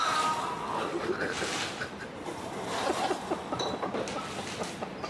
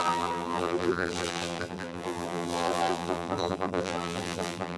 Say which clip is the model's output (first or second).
second